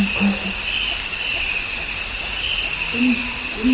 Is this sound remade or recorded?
recorded